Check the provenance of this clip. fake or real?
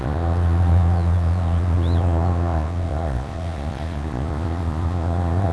fake